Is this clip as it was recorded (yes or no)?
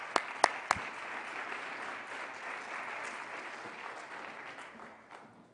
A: yes